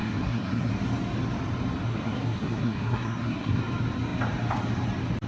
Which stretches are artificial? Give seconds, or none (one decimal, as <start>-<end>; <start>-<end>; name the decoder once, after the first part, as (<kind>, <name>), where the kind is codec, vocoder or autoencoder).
0.0-0.7 (codec, SNAC); 1.9-3.6